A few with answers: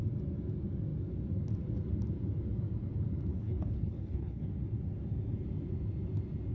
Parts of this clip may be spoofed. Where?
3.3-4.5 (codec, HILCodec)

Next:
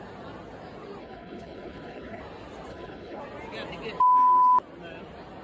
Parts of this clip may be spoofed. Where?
1.0-2.2 (codec, HILCodec); 2.7-3.2

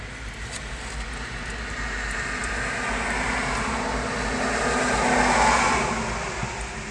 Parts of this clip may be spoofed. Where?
none

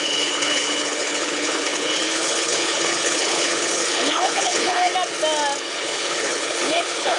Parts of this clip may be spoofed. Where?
0.0-4.9 (codec, HILCodec); 5.6-7.2